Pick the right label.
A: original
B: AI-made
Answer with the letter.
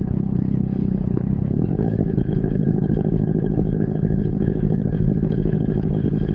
B